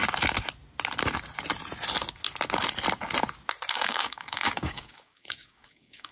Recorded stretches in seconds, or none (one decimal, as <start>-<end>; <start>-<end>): 0.0-3.7